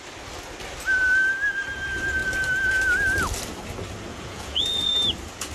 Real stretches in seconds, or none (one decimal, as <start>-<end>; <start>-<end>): 0.0-4.1; 4.9-5.5